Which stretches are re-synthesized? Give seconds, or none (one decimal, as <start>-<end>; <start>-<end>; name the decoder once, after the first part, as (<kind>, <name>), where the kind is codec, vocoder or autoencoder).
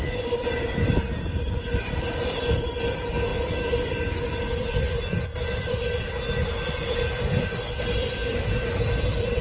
0.0-5.3 (vocoder, BigVGAN v2); 6.9-8.2; 8.9-9.4